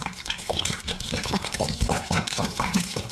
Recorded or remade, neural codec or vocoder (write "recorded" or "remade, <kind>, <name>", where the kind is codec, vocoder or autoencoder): remade, codec, SNAC